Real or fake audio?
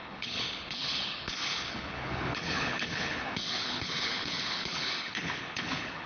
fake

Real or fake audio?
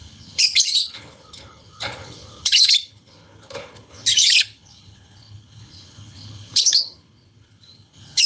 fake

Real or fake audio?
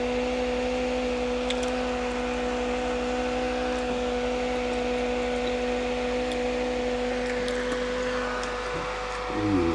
real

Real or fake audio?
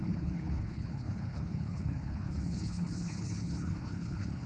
fake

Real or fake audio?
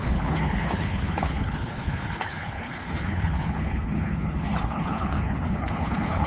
fake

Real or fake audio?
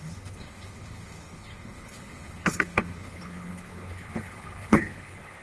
fake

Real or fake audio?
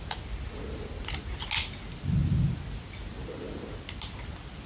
real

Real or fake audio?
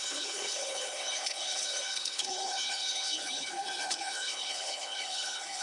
fake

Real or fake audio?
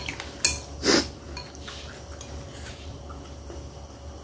real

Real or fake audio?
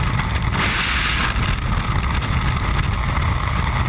real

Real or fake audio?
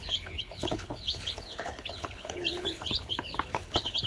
fake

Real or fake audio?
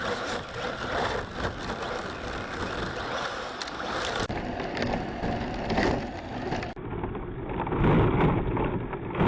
real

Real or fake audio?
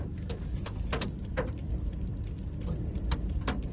real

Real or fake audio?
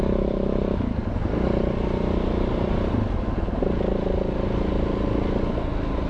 real